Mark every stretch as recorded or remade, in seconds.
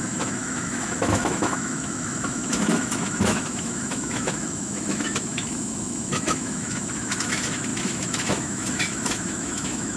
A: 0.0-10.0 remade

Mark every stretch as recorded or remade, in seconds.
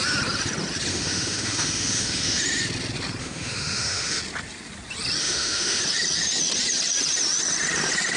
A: 0.0-0.9 recorded; 0.9-2.4 remade; 2.4-3.2 recorded; 3.2-4.2 remade; 4.2-5.2 recorded; 5.2-5.8 remade; 5.8-8.2 recorded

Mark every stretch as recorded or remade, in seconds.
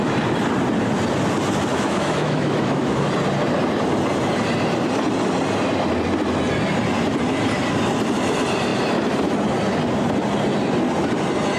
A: 0.0-1.7 recorded; 1.7-3.1 remade; 3.1-11.6 recorded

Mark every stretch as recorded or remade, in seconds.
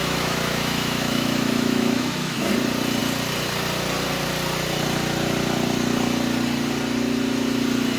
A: 0.0-2.5 remade; 2.5-8.0 recorded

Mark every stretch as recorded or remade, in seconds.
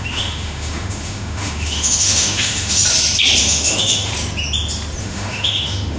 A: 0.0-2.8 remade; 2.8-3.4 recorded; 3.4-4.1 remade; 4.1-5.0 recorded; 5.0-6.0 remade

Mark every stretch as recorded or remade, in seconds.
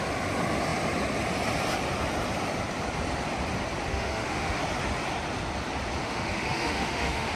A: 0.0-3.9 recorded; 3.9-4.6 remade; 4.6-6.0 recorded; 6.0-7.3 remade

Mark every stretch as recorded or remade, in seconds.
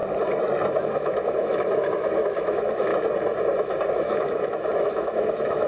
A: 0.0-0.8 recorded; 0.8-2.9 remade; 2.9-3.9 recorded; 3.9-5.7 remade